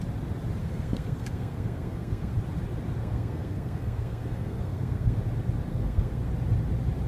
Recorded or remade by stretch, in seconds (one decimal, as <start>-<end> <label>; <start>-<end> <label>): 0.0-0.6 recorded; 0.6-2.3 remade; 2.3-3.0 recorded; 3.0-5.2 remade; 5.2-5.7 recorded; 5.7-6.3 remade; 6.3-7.1 recorded